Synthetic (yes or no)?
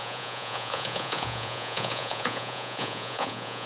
yes